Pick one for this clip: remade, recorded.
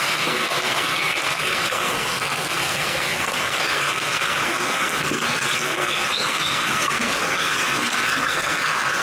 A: remade